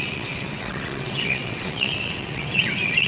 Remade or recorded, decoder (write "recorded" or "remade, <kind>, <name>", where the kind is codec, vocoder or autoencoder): remade, vocoder, WaveNeXt